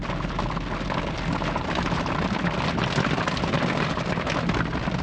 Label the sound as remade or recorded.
recorded